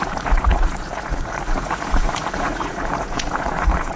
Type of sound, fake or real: fake